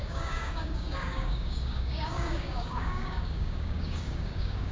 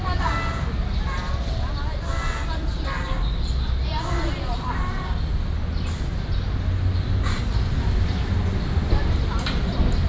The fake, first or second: first